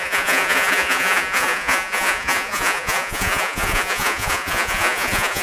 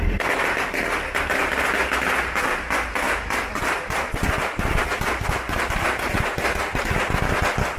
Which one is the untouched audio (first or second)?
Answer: second